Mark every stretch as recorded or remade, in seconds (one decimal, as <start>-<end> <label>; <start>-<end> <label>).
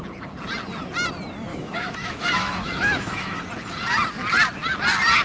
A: 0.0-1.5 recorded; 1.5-3.4 remade; 3.4-5.2 recorded